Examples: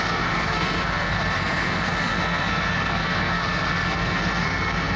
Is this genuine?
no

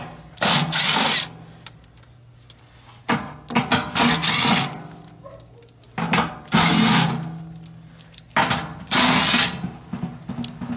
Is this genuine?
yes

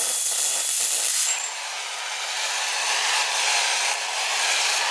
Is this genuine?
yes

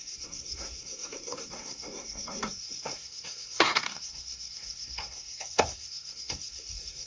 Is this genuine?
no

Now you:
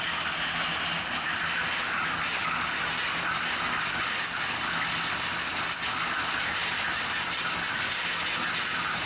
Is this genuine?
yes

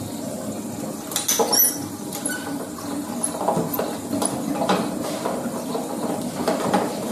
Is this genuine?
yes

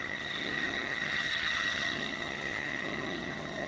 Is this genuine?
no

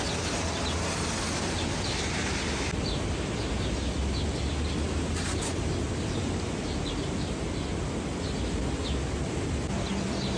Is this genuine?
yes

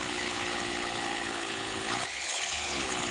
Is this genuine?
no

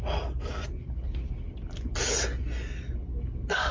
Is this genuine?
yes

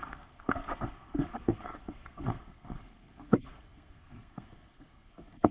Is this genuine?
no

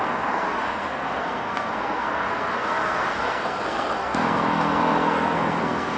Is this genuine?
no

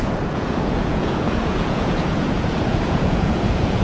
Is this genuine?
no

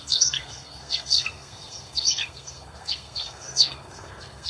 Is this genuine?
no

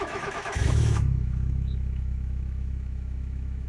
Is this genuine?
no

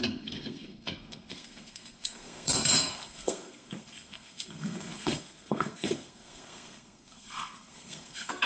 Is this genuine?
no